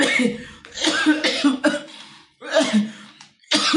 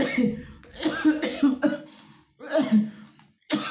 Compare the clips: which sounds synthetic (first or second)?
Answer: first